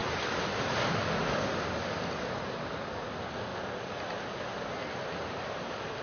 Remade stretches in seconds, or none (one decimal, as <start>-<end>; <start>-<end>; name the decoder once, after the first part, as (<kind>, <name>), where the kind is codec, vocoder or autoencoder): none